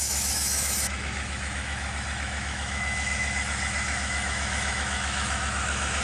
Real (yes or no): no